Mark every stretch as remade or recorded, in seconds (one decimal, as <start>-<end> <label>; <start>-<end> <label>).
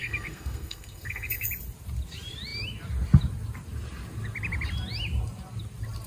0.0-1.5 remade; 1.5-6.1 recorded